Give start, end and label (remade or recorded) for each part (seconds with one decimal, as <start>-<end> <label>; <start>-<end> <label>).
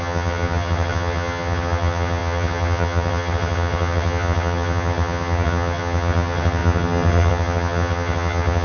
0.0-8.6 remade